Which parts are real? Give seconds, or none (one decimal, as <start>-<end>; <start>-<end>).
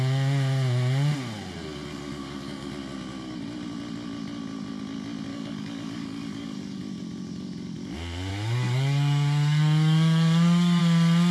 0.0-1.9; 2.7-5.3; 6.8-8.3; 10.8-11.3